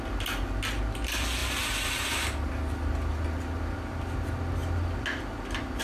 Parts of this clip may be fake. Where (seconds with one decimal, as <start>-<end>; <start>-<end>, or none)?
1.4-2.0